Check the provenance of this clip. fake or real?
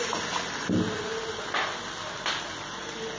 real